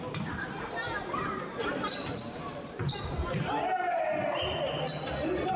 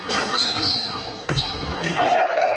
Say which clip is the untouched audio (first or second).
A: first